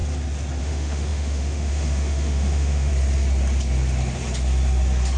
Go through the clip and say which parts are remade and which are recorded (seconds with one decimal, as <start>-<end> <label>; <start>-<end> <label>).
0.0-0.6 recorded; 0.6-2.9 remade; 2.9-5.2 recorded